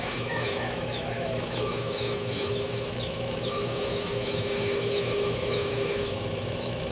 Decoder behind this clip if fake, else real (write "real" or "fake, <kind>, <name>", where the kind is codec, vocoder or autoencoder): fake, autoencoder, DAC-VAE